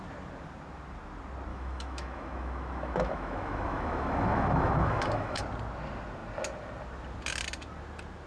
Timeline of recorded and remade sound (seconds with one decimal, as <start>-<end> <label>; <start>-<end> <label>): 0.0-1.5 recorded; 1.5-5.4 remade; 5.4-8.3 recorded